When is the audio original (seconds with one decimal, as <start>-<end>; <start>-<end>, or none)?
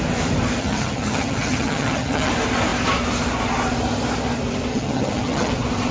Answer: 0.0-0.6; 2.3-4.7; 5.5-5.9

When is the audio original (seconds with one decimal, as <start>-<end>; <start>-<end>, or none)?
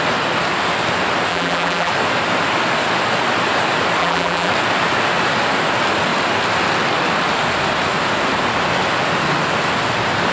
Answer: 0.0-1.3; 1.9-4.0; 4.5-10.3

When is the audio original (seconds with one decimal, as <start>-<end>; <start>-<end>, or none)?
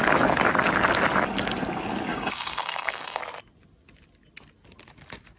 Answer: 0.0-2.1; 3.2-5.4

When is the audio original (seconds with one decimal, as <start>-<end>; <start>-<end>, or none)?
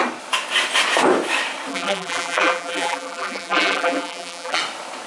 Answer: 0.0-1.7; 4.6-5.1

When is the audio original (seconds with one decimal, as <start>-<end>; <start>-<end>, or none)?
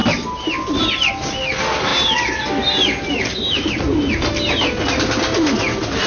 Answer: 0.0-6.1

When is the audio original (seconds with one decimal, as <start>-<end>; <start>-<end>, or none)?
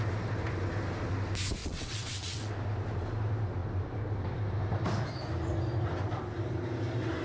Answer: 0.0-1.6; 2.5-7.2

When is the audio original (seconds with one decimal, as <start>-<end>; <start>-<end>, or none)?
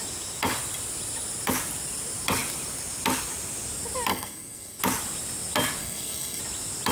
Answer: 0.0-4.1; 4.8-5.8; 6.4-6.9